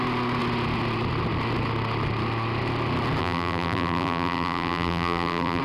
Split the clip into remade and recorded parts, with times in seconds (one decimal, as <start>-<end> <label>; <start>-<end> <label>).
0.0-3.2 recorded; 3.2-5.6 remade